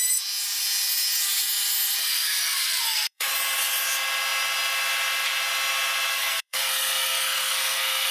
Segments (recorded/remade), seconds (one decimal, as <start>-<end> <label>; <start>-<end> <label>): 0.0-2.0 recorded; 2.0-3.3 remade; 3.3-6.1 recorded; 6.1-8.1 remade